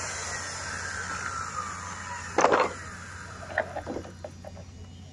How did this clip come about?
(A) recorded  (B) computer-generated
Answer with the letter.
A